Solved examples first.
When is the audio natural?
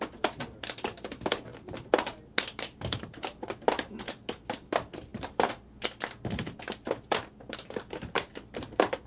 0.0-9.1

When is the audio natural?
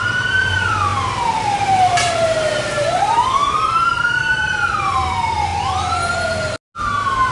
5.5-7.3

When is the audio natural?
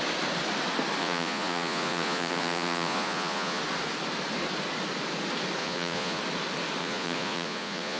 0.0-1.0; 3.6-5.6; 6.2-6.8